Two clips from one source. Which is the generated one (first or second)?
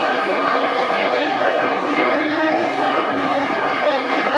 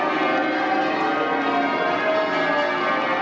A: first